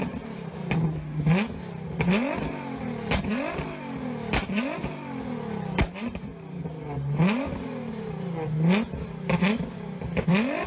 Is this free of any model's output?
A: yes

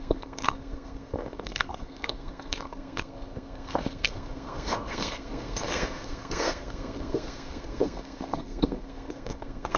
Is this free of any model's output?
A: no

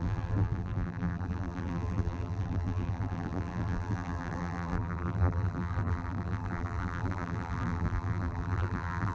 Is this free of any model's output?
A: no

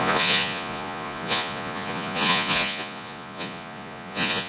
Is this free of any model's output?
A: no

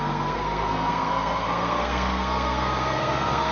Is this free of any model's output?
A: no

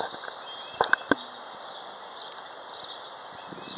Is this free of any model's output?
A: yes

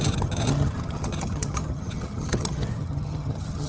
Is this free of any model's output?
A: no